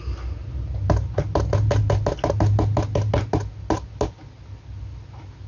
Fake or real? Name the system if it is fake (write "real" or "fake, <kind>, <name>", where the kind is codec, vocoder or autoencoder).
real